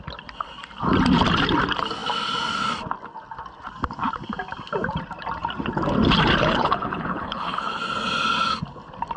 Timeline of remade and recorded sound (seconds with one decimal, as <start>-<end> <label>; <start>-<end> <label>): 0.0-6.4 recorded; 6.4-7.8 remade; 7.8-9.2 recorded